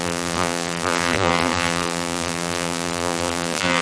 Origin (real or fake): fake